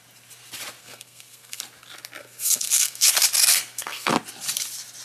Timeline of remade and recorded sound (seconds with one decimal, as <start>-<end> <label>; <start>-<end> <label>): 0.0-0.8 recorded; 0.8-1.6 remade; 1.6-2.2 recorded; 2.2-3.1 remade; 3.1-3.5 recorded; 3.5-4.1 remade; 4.1-5.0 recorded